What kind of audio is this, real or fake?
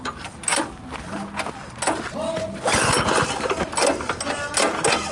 real